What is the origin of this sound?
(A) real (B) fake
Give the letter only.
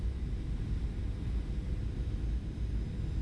A